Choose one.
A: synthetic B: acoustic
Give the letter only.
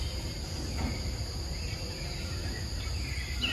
B